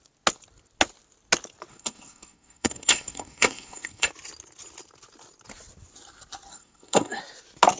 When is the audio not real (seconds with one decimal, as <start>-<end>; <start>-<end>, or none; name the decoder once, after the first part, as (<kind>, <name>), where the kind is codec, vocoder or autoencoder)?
1.7-4.1 (codec, SNAC); 6.5-7.2